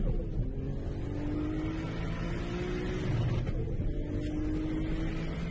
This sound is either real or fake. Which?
real